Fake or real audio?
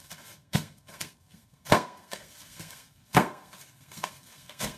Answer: fake